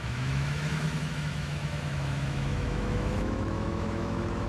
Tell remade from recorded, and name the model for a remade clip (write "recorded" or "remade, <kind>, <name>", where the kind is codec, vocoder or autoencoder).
remade, autoencoder, DAC-VAE